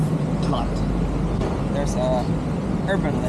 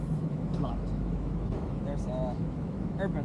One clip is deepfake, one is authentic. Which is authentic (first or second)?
first